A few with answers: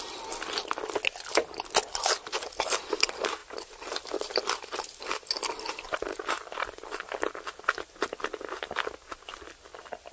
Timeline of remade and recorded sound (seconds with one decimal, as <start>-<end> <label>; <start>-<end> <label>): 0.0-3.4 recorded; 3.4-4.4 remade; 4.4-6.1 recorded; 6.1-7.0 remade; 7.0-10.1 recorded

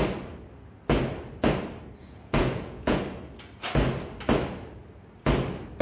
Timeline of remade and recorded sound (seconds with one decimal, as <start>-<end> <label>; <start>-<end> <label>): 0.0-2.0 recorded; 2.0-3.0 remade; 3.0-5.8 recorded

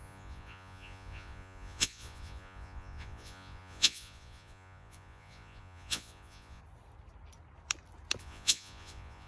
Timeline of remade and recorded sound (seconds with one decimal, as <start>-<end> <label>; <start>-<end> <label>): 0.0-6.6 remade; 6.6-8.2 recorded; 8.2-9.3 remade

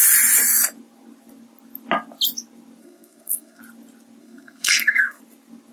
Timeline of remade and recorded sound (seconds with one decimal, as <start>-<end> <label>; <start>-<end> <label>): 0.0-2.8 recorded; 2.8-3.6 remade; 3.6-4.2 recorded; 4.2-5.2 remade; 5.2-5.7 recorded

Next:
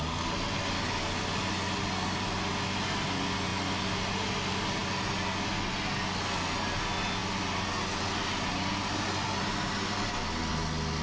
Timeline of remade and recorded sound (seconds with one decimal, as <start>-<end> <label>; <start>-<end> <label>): 0.0-11.0 recorded